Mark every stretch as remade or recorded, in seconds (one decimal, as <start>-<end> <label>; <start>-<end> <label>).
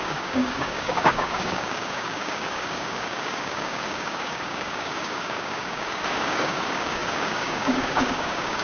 0.0-8.6 remade